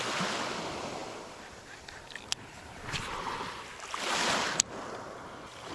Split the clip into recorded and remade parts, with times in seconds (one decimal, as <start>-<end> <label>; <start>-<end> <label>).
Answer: 0.0-1.0 recorded; 1.0-3.3 remade; 3.3-5.7 recorded